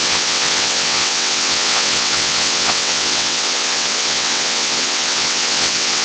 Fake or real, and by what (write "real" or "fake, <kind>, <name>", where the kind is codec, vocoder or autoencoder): fake, vocoder, WaveNeXt